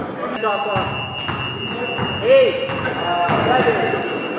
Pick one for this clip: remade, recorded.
recorded